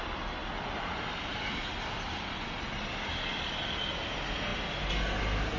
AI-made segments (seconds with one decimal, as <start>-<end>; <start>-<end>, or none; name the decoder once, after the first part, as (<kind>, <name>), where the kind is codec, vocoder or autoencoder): none